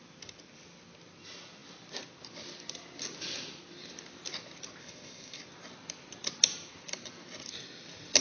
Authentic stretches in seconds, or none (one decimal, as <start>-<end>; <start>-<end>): 0.0-4.8; 5.4-8.2